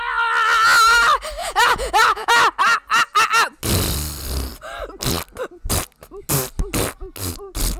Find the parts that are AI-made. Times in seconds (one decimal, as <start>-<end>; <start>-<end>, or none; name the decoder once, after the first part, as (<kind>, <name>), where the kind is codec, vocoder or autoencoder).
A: 1.4-2.3 (vocoder, Vocos)